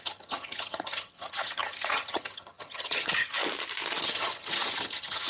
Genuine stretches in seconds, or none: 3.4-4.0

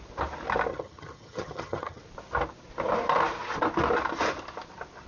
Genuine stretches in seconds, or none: 0.0-0.7; 2.0-5.1